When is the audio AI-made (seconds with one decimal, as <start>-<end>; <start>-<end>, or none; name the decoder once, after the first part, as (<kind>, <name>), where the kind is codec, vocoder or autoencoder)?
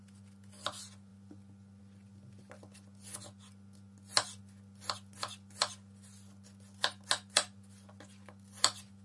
none